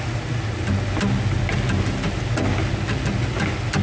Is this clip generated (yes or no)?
no